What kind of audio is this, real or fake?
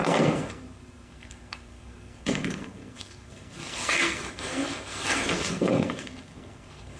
fake